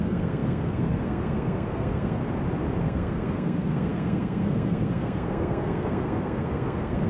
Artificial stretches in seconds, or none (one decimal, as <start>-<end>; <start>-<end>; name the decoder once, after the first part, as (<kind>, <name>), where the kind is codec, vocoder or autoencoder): 0.0-2.2 (codec, SNAC); 2.8-7.1